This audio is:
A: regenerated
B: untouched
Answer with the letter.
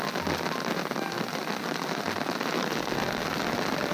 B